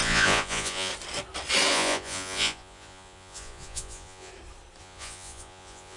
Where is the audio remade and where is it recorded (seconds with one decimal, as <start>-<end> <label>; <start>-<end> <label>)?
0.0-0.9 remade; 0.9-1.7 recorded; 1.7-4.3 remade; 4.3-4.8 recorded; 4.8-6.0 remade